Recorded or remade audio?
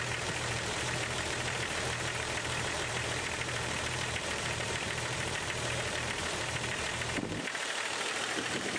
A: remade